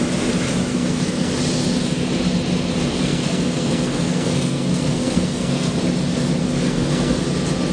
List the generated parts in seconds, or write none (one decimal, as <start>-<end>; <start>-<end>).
0.7-1.3; 2.9-5.8; 6.4-7.2